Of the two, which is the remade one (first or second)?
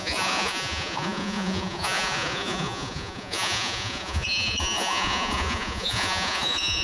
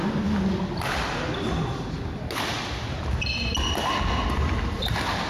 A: first